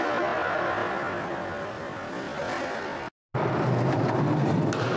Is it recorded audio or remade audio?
recorded